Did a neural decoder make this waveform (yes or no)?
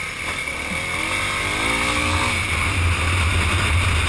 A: no